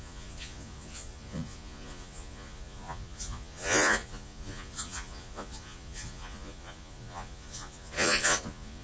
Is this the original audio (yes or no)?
no